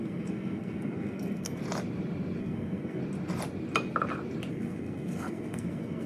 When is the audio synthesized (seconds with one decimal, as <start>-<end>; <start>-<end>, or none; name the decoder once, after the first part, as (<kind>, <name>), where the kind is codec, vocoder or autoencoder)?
0.0-1.6 (codec, SNAC); 2.4-3.0; 4.5-6.1